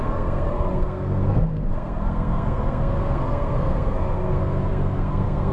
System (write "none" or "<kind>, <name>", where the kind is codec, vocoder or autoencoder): codec, SNAC